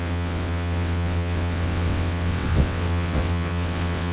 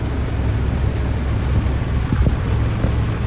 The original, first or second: second